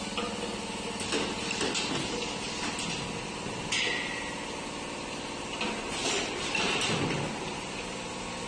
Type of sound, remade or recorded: recorded